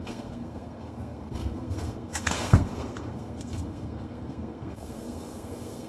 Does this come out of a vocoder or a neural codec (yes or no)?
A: yes